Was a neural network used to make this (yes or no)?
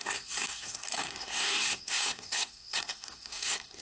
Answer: yes